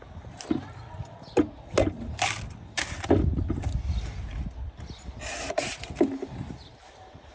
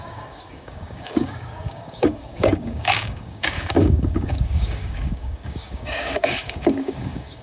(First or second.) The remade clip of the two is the second